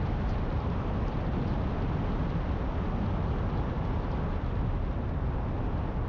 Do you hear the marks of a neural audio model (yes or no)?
no